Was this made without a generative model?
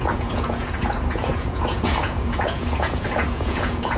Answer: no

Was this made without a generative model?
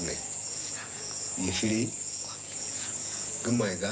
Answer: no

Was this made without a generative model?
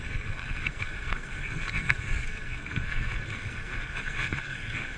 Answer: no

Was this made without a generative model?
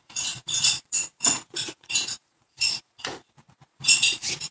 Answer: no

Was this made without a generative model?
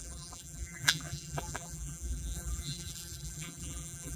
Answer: no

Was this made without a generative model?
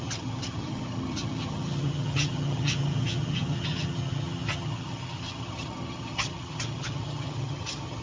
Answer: no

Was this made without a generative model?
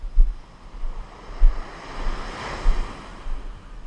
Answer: yes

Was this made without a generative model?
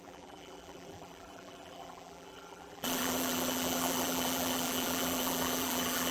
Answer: no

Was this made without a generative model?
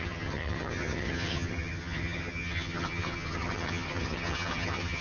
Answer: no